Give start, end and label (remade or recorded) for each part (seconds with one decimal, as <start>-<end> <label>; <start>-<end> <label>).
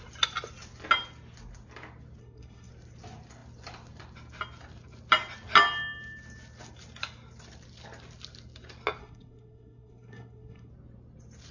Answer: 0.0-2.2 recorded; 2.2-2.7 remade; 2.7-9.0 recorded; 9.0-10.7 remade; 10.7-11.5 recorded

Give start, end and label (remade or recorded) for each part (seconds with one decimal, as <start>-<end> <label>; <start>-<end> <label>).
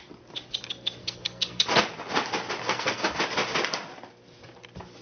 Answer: 0.0-1.0 recorded; 1.0-1.7 remade; 1.7-2.6 recorded; 2.6-3.2 remade; 3.2-5.0 recorded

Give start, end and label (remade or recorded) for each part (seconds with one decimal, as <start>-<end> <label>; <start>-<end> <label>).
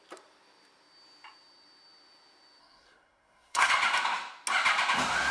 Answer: 0.0-2.6 recorded; 2.6-3.7 remade; 3.7-5.3 recorded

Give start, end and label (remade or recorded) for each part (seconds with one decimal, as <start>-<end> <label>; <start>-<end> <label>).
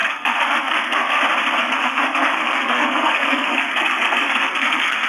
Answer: 0.0-1.2 remade; 1.2-1.6 recorded; 1.6-5.1 remade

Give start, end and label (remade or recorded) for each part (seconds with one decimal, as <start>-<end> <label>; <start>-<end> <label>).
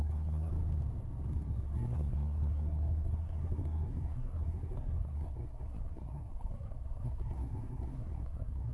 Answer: 0.0-0.5 remade; 0.5-1.3 recorded; 1.3-8.7 remade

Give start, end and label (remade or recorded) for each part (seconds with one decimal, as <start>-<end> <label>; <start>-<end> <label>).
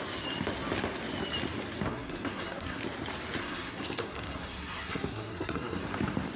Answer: 0.0-1.9 recorded; 1.9-2.8 remade; 2.8-3.4 recorded; 3.4-5.8 remade; 5.8-6.4 recorded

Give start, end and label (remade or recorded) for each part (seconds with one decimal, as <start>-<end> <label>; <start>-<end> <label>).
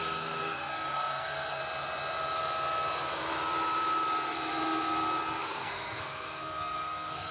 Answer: 0.0-1.6 remade; 1.6-5.4 recorded; 5.4-7.3 remade